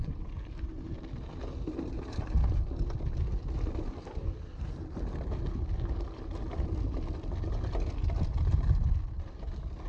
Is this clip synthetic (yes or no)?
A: no